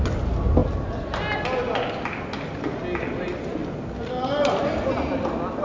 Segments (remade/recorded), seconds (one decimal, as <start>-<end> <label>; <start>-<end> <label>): 0.0-5.6 recorded